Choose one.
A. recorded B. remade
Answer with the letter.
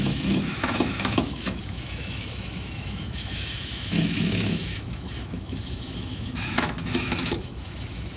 B